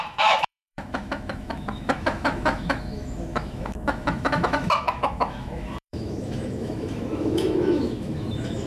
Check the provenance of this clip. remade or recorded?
remade